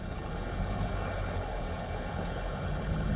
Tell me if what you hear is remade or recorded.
remade